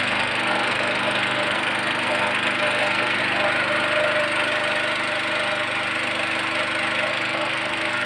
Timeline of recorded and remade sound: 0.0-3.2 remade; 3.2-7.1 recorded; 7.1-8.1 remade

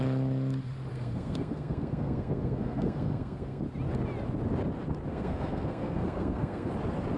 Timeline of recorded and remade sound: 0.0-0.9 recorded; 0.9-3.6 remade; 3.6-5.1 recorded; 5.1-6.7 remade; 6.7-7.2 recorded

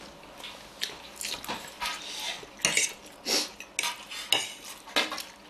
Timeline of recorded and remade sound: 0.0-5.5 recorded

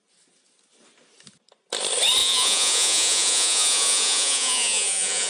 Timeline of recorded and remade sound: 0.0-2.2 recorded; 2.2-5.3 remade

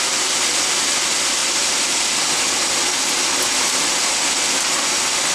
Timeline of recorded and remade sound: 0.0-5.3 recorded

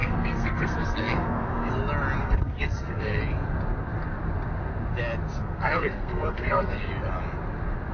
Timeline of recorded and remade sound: 0.0-1.7 remade; 1.7-2.2 recorded; 2.2-3.2 remade; 3.2-5.4 recorded; 5.4-6.9 remade; 6.9-7.9 recorded

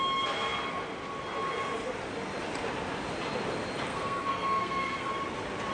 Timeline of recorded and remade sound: 0.0-3.9 recorded; 3.9-5.1 remade; 5.1-5.7 recorded